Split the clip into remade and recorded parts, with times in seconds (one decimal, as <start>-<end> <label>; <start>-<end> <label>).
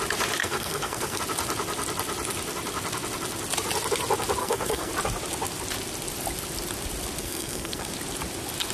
0.0-0.4 recorded; 0.4-1.2 remade; 1.2-4.4 recorded; 4.4-4.9 remade; 4.9-7.2 recorded; 7.2-7.9 remade; 7.9-8.7 recorded